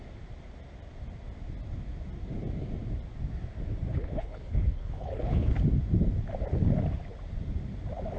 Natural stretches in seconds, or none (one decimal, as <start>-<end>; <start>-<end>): 0.0-3.9; 5.6-8.2